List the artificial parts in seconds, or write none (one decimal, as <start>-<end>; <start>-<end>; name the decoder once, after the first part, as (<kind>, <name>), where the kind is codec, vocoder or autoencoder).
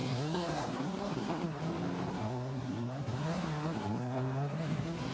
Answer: 0.0-1.6 (codec, SNAC); 2.1-5.1